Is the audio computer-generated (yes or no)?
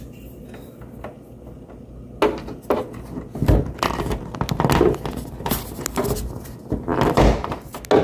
no